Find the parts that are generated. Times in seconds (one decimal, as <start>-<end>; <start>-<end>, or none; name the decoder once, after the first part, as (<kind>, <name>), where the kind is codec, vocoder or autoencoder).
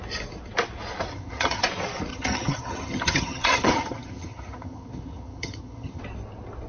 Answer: 1.1-1.6 (vocoder, HiFi-GAN); 2.1-6.0